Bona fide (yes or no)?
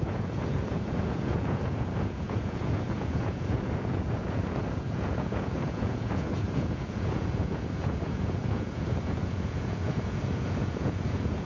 no